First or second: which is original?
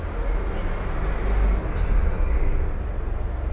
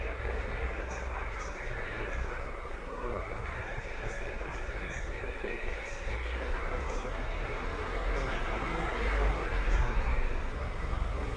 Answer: first